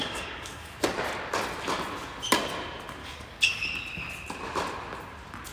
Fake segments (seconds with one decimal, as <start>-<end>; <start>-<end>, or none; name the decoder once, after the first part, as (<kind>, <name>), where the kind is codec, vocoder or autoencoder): 0.0-0.7 (codec, DAC); 3.0-3.8

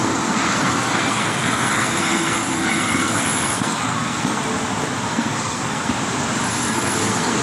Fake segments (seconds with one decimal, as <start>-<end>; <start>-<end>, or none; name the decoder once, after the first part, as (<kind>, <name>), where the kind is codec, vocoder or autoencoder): 0.0-4.4 (codec, SNAC); 5.1-5.9; 6.5-7.4

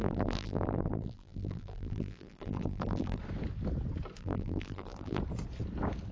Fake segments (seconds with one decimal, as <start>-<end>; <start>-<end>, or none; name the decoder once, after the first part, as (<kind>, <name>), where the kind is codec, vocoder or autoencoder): 0.0-3.2 (vocoder, BigVGAN v2); 4.2-5.2

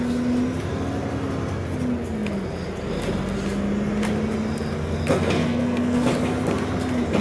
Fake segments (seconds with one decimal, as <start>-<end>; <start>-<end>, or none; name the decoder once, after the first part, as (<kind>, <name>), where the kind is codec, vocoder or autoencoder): 5.1-6.1 (codec, SNAC)